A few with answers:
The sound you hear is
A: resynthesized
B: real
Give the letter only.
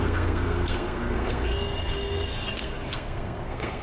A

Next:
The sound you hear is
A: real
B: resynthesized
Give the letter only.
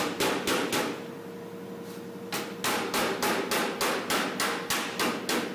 A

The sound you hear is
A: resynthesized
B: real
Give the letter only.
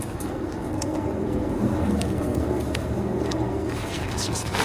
A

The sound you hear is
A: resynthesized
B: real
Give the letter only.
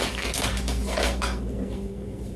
A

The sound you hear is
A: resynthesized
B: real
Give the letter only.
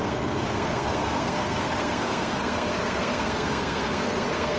A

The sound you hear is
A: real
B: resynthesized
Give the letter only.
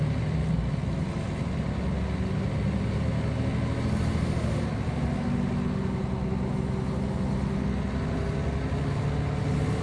A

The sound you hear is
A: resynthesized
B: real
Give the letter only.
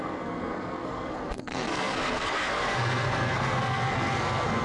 A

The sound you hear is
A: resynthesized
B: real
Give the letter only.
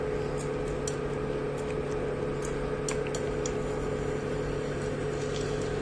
B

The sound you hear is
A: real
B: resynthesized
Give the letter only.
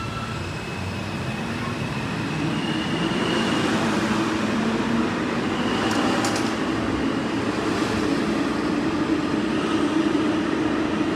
A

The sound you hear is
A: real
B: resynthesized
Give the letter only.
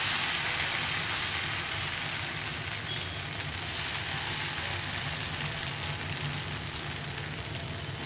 A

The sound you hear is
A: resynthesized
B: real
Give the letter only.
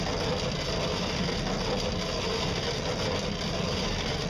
B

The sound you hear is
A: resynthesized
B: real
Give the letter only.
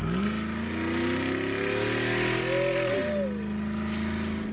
B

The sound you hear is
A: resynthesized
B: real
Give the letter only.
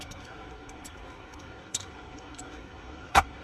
A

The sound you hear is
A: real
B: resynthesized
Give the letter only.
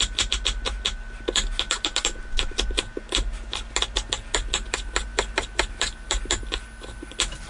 A